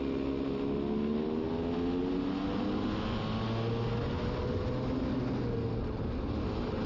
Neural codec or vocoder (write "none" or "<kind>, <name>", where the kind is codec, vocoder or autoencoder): none